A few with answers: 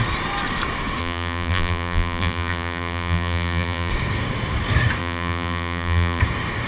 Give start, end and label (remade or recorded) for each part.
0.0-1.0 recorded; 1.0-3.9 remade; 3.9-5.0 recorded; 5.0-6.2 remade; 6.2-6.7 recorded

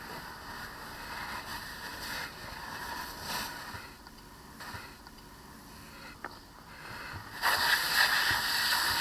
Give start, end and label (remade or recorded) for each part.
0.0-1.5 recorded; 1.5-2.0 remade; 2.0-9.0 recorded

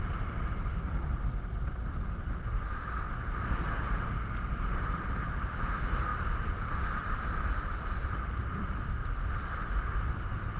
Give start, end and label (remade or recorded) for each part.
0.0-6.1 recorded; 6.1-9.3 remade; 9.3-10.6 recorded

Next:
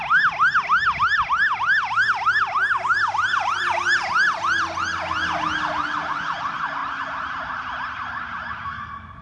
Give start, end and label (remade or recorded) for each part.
0.0-9.2 recorded

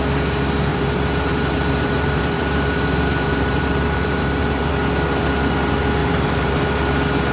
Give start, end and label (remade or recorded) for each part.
0.0-0.7 recorded; 0.7-4.7 remade; 4.7-6.0 recorded; 6.0-6.8 remade; 6.8-7.3 recorded